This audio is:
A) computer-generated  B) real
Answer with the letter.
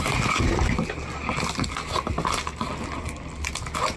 B